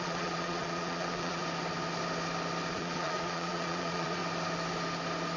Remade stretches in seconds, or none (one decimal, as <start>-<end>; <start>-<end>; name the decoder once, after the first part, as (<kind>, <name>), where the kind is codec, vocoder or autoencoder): 0.0-1.4 (vocoder, Vocos); 2.7-4.2